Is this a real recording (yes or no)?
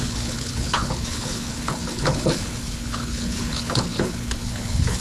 no